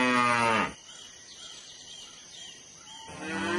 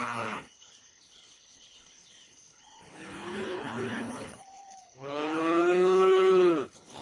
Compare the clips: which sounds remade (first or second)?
second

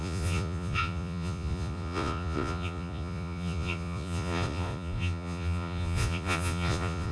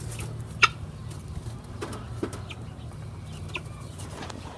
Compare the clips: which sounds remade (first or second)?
first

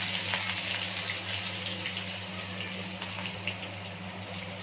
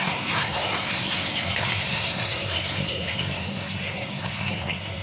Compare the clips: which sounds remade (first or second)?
second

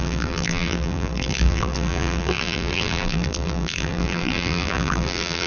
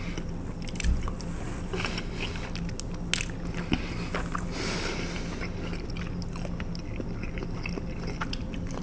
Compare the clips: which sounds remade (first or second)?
first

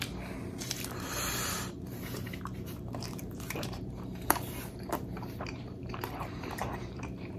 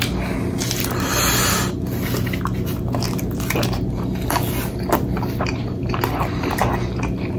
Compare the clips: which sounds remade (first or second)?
first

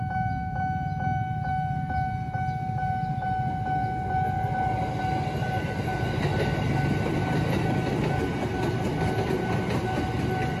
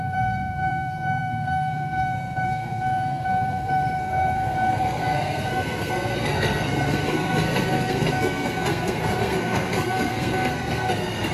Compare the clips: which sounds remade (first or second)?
second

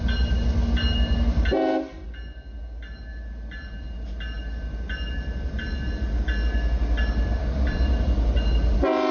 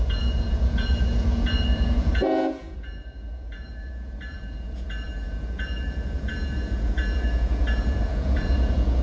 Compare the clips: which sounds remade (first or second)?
second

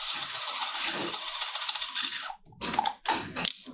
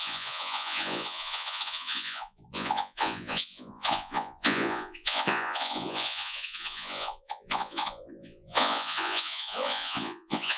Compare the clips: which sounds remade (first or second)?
second